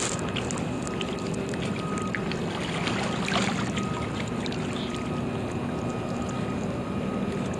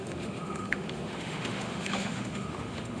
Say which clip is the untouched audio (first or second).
first